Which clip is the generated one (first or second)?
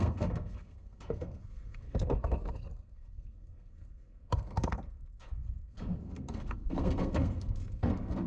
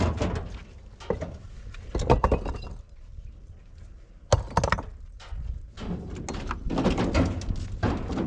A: first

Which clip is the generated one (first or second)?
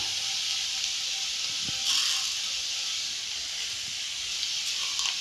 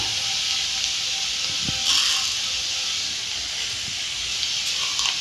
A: first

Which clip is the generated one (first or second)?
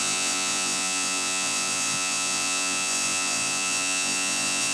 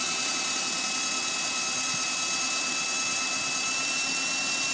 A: first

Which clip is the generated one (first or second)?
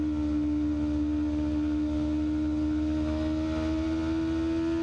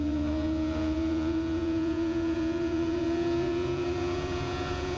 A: second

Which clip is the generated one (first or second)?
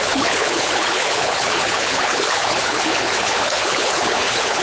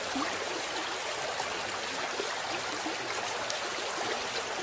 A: first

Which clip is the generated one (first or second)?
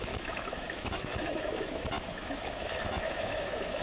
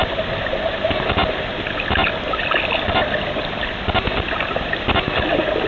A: first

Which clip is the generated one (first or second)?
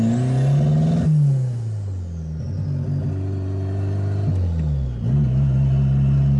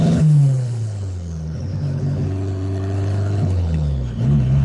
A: second